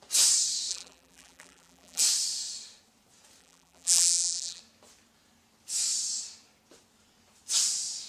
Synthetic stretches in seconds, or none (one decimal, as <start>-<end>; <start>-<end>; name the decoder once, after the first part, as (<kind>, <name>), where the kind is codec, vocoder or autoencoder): 0.7-2.0 (vocoder, BigVGAN v2); 3.4-4.6